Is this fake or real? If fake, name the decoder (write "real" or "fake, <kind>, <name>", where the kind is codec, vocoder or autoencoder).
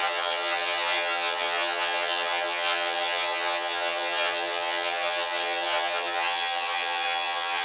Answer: fake, vocoder, HiFi-GAN